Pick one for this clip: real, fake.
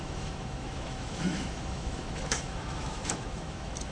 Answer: fake